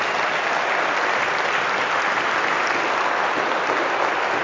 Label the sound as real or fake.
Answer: real